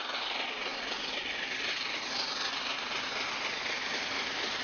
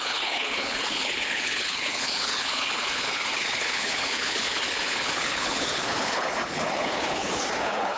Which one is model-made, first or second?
second